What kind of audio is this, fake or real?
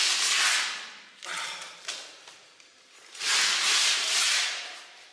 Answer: real